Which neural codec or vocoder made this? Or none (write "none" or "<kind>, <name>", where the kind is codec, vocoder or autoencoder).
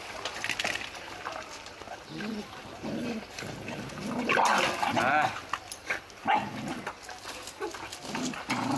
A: none